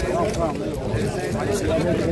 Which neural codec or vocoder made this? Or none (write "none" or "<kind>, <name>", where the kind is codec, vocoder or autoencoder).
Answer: none